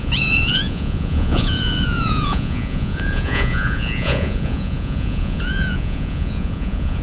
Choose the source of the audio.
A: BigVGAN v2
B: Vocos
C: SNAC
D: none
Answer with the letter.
B